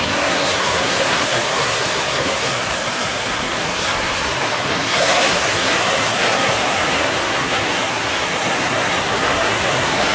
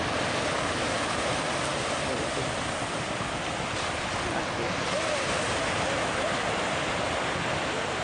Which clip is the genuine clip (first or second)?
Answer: second